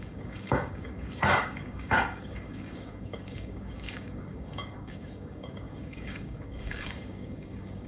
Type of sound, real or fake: fake